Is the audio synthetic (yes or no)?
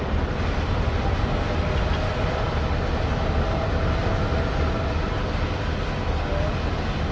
no